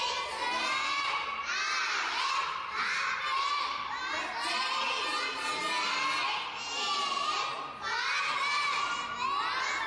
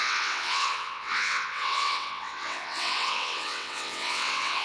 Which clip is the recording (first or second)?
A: first